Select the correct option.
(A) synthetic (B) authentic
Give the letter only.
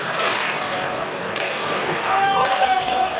A